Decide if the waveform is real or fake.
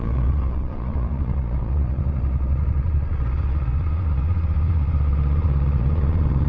fake